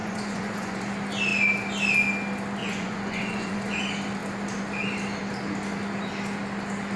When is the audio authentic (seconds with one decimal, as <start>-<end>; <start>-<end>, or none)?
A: 0.8-2.6; 3.8-7.0

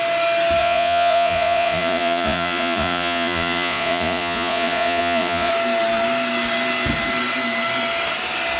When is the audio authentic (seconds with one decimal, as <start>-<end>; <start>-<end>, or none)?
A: 0.0-0.6; 5.5-8.6

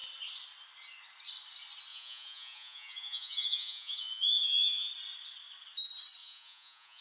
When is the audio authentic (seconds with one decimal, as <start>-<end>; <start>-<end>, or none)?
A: 0.0-1.9; 4.9-6.2

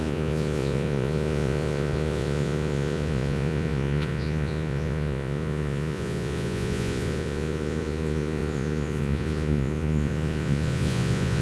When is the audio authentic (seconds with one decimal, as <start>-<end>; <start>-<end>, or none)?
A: none